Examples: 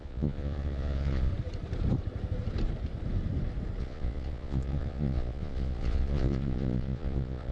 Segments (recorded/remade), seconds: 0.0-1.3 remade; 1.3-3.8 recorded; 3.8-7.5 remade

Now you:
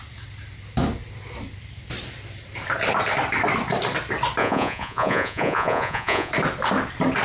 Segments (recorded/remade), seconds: 0.0-4.4 recorded; 4.4-6.3 remade; 6.3-7.2 recorded

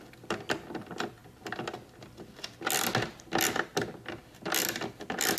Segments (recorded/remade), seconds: 0.0-5.4 recorded

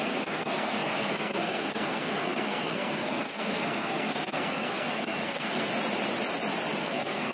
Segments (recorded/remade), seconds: 0.0-5.7 remade; 5.7-6.8 recorded; 6.8-7.3 remade

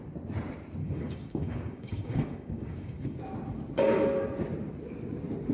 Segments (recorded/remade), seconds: 0.0-0.8 recorded; 0.8-3.2 remade; 3.2-5.5 recorded

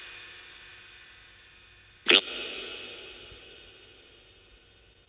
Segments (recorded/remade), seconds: 0.0-5.1 recorded

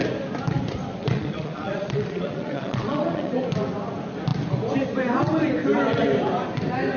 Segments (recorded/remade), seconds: 0.0-1.0 recorded; 1.0-3.3 remade; 3.3-7.0 recorded